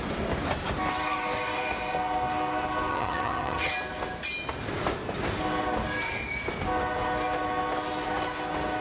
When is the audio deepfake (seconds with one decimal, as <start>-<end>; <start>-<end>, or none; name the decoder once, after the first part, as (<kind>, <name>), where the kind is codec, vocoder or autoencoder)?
2.9-3.7 (vocoder, HiFi-GAN)